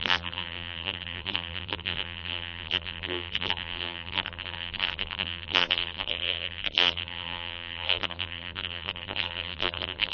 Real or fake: fake